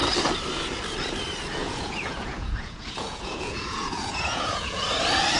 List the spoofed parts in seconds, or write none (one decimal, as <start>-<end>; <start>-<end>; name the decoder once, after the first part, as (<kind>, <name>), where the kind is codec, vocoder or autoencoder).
1.6-4.8 (vocoder, Vocos)